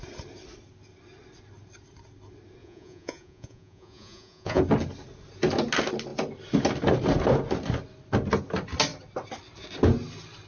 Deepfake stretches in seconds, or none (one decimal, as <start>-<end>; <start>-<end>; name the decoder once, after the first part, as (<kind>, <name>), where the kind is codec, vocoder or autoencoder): 2.6-4.6 (vocoder, Vocos)